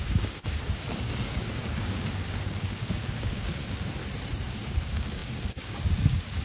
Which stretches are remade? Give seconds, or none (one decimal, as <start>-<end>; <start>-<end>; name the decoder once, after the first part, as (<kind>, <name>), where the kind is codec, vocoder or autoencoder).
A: 0.0-4.0 (codec, DAC); 4.6-6.4